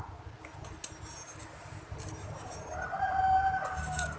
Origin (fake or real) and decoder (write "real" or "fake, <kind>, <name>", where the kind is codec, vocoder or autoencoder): real